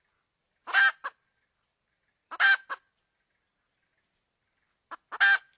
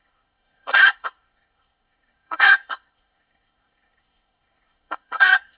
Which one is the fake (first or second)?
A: second